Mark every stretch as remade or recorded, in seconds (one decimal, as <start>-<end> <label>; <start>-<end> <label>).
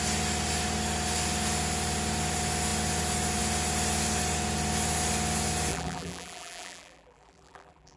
0.0-5.7 recorded; 5.7-8.0 remade